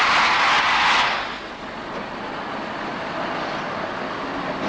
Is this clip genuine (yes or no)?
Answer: yes